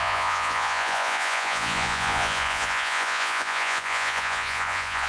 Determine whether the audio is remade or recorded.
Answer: remade